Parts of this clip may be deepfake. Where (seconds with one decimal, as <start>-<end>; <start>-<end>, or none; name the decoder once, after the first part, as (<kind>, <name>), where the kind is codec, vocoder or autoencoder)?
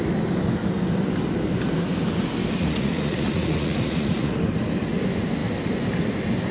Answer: 2.6-4.4 (vocoder, Vocos)